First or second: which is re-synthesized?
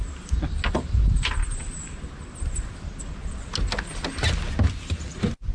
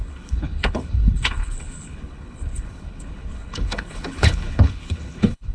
second